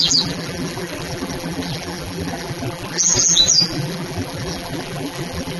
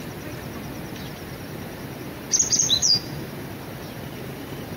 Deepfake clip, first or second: first